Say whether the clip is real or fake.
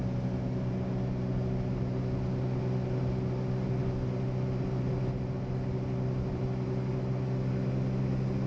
real